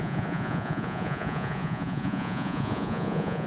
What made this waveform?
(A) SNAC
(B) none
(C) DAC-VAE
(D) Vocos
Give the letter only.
D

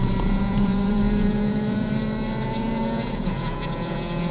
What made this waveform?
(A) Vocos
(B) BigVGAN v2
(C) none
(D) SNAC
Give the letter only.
A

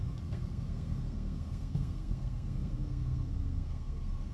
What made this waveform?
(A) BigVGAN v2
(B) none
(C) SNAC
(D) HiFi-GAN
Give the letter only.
C